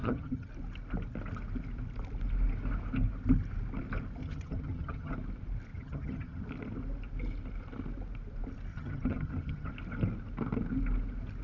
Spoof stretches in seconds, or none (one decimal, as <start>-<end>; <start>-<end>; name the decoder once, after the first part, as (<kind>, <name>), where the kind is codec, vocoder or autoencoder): 0.0-0.5 (vocoder, HiFi-GAN); 4.2-5.1; 5.7-6.4; 8.7-9.7